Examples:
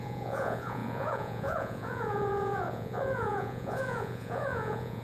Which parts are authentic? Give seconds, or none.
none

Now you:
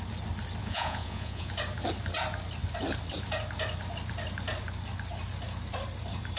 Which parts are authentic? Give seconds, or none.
0.0-0.6; 1.5-6.4

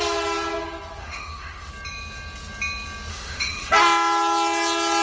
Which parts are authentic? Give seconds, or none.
0.0-1.0; 1.7-3.1; 3.7-5.0

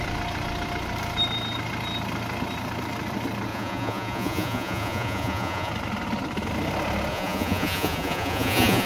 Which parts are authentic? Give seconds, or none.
0.0-3.5; 5.7-7.1

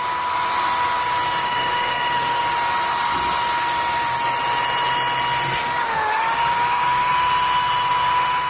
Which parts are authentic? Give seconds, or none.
0.0-1.4; 2.4-5.6; 7.1-8.5

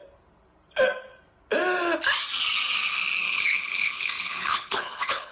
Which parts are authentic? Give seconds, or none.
0.0-3.2

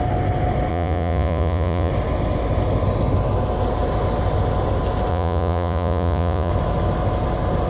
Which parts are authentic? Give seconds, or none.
0.0-0.7; 1.9-5.1; 6.5-7.7

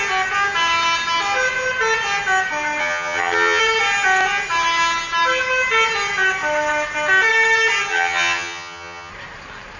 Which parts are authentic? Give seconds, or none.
0.0-2.8; 3.6-7.9; 9.1-9.8